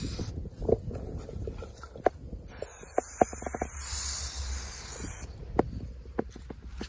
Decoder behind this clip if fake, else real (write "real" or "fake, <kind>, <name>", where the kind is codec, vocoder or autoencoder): real